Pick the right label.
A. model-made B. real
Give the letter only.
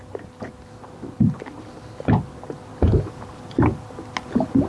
B